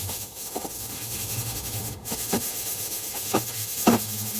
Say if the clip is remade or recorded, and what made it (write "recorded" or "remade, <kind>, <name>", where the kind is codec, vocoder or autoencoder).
remade, autoencoder, DAC-VAE